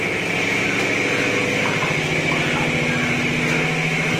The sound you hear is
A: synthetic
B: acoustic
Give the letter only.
A